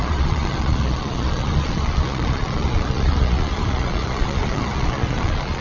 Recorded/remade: remade